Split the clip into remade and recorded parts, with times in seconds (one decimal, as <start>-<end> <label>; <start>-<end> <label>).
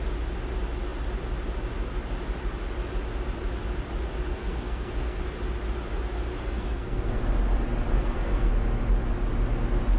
0.0-4.3 recorded; 4.3-5.2 remade; 5.2-6.4 recorded; 6.4-7.2 remade; 7.2-7.9 recorded; 7.9-8.5 remade; 8.5-10.0 recorded